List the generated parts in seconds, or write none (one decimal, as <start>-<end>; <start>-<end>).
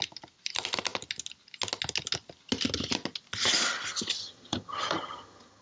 4.2-5.6